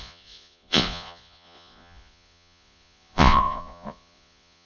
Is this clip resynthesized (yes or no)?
yes